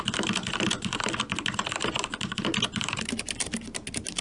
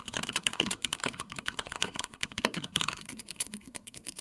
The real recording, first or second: first